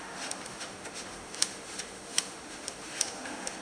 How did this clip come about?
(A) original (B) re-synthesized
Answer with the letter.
B